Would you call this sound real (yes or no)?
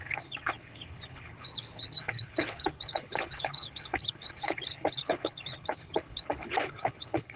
no